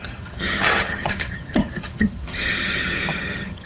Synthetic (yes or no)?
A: yes